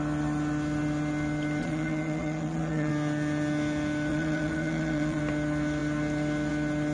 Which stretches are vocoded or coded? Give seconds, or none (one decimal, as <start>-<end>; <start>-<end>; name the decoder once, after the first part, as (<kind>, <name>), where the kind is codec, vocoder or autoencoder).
1.6-2.9 (vocoder, Vocos); 4.1-5.2

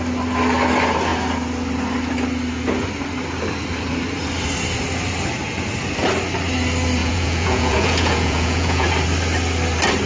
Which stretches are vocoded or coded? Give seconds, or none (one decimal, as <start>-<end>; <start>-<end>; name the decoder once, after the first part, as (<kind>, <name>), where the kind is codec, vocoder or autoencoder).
7.0-8.9 (vocoder, Vocos)

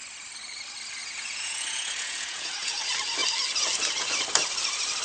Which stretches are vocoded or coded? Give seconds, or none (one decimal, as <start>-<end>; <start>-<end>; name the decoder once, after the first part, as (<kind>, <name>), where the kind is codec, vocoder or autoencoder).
1.0-2.8 (vocoder, Vocos)